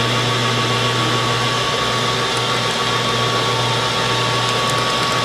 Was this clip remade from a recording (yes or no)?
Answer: no